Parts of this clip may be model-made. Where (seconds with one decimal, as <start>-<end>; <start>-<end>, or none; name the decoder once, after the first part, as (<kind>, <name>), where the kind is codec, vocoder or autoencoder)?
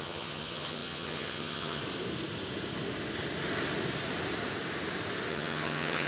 0.0-1.8 (vocoder, HiFi-GAN); 5.3-6.1